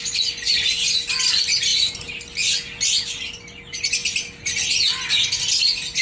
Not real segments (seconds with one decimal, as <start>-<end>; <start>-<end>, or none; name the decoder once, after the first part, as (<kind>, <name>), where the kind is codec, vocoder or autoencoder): none